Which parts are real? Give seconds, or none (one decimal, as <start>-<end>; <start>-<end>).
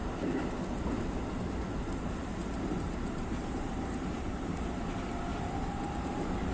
0.0-2.4; 4.4-5.3